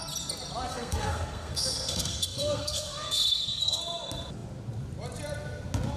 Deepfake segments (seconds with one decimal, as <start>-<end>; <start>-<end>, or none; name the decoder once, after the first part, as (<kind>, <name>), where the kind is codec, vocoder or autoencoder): 0.7-3.8 (codec, SNAC)